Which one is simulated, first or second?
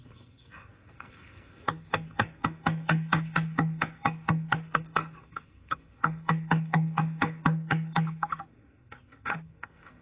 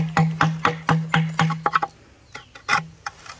first